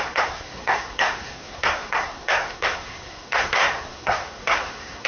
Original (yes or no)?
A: no